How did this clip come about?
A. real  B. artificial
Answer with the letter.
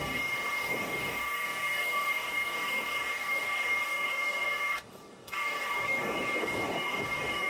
B